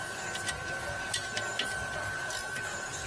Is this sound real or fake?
real